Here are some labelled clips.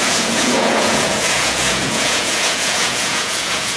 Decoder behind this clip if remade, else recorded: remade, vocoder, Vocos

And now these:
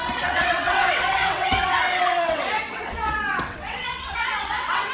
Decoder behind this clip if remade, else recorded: remade, vocoder, WaveNeXt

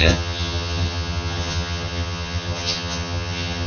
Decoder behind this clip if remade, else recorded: remade, vocoder, HiFi-GAN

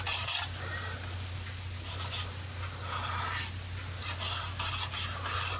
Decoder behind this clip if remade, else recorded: recorded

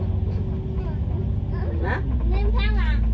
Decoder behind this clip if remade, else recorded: recorded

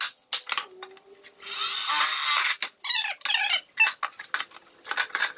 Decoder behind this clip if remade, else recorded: recorded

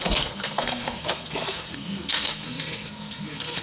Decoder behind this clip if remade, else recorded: remade, codec, SNAC